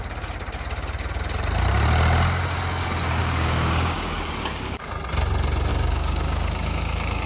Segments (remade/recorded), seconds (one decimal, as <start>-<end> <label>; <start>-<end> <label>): 0.0-3.2 recorded; 3.2-4.9 remade; 4.9-5.7 recorded; 5.7-7.3 remade